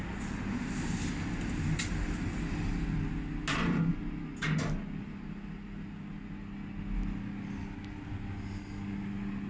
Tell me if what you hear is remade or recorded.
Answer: recorded